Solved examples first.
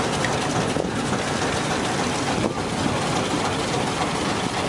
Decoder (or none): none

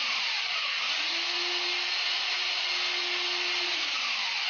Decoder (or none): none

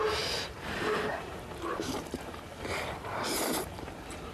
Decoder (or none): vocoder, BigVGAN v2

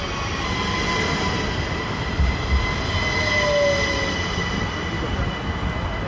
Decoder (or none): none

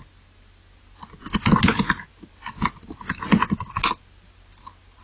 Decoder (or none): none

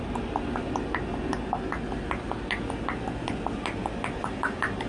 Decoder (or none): none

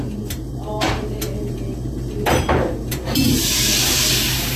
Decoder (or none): vocoder, BigVGAN v2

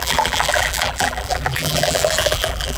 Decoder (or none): vocoder, BigVGAN v2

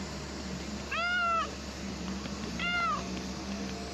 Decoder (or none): none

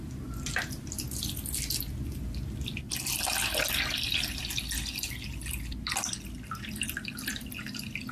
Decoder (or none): none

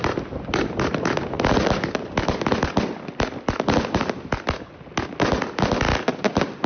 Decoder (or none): none